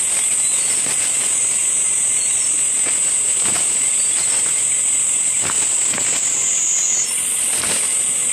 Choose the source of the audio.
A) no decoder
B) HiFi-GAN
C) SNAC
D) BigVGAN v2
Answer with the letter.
A